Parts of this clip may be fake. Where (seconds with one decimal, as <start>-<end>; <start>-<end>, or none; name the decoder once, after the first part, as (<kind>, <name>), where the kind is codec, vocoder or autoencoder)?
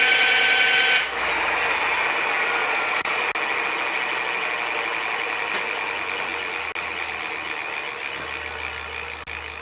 2.6-3.2 (vocoder, Vocos)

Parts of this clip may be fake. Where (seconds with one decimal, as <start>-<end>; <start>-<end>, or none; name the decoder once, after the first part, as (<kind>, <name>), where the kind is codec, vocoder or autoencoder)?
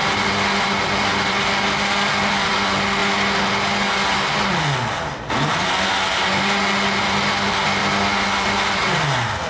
none